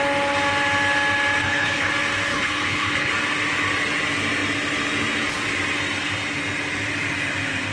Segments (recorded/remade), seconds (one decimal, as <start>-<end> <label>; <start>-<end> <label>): 0.0-1.4 recorded; 1.4-1.9 remade; 1.9-2.3 recorded; 2.3-3.1 remade; 3.1-7.7 recorded

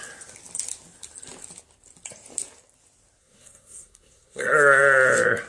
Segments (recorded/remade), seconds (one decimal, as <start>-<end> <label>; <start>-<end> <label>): 0.0-3.2 recorded; 3.2-4.8 remade; 4.8-5.5 recorded

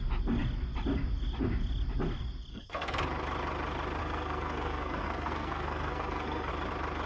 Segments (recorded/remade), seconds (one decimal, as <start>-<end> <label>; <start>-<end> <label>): 0.0-2.5 recorded; 2.5-3.0 remade; 3.0-4.0 recorded; 4.0-6.5 remade; 6.5-7.1 recorded

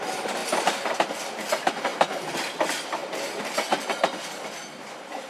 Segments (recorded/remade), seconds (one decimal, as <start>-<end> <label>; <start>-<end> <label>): 0.0-1.9 remade; 1.9-2.6 recorded; 2.6-5.3 remade

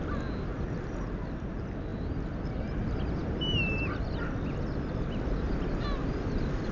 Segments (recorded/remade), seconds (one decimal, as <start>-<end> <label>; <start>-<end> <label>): 0.0-3.2 recorded; 3.2-3.9 remade; 3.9-6.7 recorded